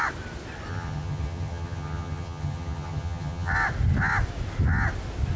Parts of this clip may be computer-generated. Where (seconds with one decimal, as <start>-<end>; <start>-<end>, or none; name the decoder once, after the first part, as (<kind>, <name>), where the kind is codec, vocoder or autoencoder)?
0.7-3.5 (vocoder, HiFi-GAN)